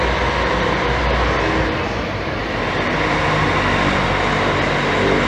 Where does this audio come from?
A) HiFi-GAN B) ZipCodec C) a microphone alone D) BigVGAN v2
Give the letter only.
C